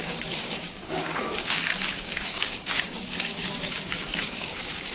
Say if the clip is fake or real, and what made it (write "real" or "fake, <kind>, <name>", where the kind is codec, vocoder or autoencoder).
fake, codec, DAC